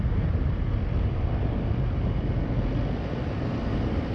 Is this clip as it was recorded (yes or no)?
yes